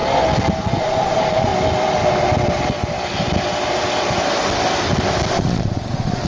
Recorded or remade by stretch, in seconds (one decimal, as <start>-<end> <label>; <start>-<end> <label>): 0.0-0.8 recorded; 0.8-1.5 remade; 1.5-5.3 recorded; 5.3-6.3 remade